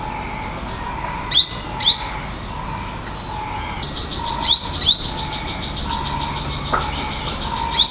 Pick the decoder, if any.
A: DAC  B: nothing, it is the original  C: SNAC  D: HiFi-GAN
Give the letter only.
B